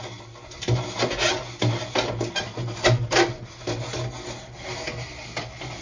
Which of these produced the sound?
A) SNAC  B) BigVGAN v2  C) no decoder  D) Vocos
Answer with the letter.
C